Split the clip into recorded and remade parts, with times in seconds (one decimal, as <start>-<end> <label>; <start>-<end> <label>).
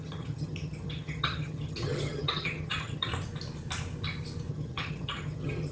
0.0-3.1 remade; 3.1-4.5 recorded; 4.5-5.7 remade